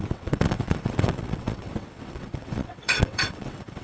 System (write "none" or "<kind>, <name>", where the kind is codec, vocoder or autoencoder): vocoder, WaveNeXt